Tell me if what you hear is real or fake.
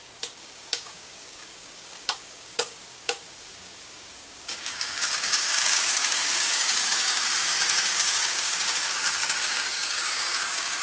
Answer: fake